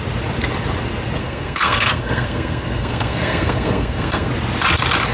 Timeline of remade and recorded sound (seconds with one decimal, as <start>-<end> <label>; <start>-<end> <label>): 0.0-1.2 recorded; 1.2-4.3 remade; 4.3-5.1 recorded